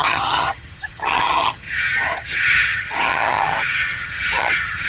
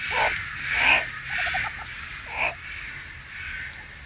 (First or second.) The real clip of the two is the second